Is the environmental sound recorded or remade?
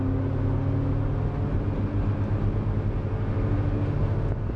recorded